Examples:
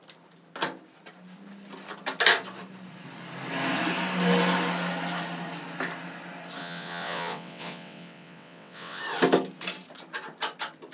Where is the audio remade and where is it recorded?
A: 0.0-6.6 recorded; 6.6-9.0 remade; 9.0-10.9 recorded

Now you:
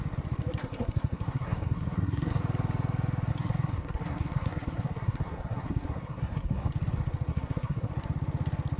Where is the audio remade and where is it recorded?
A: 0.0-0.6 recorded; 0.6-2.4 remade; 2.4-3.3 recorded; 3.3-6.7 remade; 6.7-7.3 recorded; 7.3-7.9 remade; 7.9-8.8 recorded

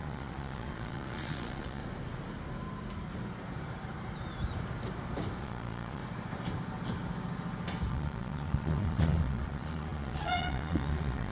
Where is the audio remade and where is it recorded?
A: 0.0-1.8 remade; 1.8-5.4 recorded; 5.4-6.0 remade; 6.0-7.9 recorded; 7.9-11.3 remade

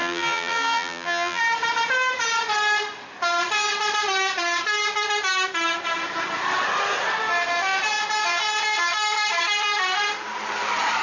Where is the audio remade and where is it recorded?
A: 0.0-1.4 remade; 1.4-11.0 recorded

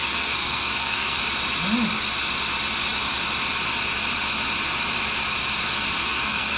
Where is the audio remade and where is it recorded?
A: 0.0-1.2 remade; 1.2-6.0 recorded; 6.0-6.6 remade

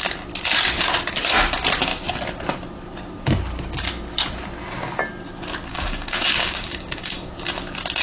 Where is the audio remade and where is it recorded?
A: 0.0-5.7 recorded; 5.7-7.3 remade; 7.3-8.0 recorded

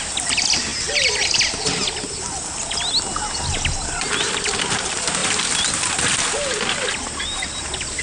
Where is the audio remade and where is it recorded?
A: 0.0-8.0 recorded